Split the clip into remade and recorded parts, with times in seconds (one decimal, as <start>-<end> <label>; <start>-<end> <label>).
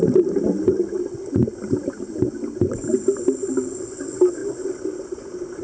0.0-5.6 recorded